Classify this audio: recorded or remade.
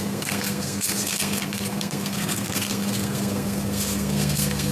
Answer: remade